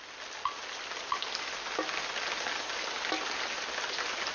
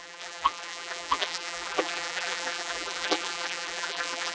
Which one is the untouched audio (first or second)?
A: first